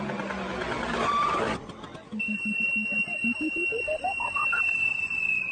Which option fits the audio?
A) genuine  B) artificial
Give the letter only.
A